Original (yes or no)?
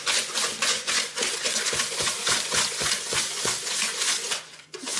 no